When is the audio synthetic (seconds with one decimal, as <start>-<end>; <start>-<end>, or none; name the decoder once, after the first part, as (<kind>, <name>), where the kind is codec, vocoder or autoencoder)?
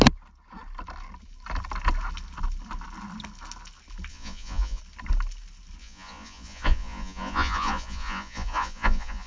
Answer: 4.1-4.8 (vocoder, Vocos); 5.8-9.3